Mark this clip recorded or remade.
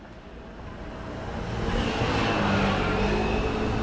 recorded